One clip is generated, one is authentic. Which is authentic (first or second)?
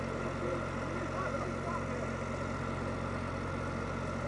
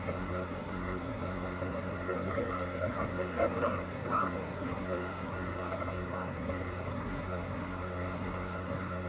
first